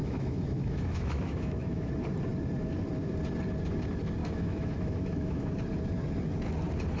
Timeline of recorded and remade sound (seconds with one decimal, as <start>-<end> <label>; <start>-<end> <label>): 0.0-1.9 remade; 1.9-4.2 recorded; 4.2-5.5 remade; 5.5-7.0 recorded